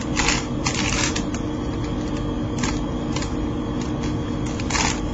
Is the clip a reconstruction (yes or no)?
no